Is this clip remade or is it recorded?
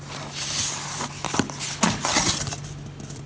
recorded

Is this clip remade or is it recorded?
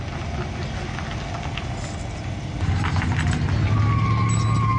recorded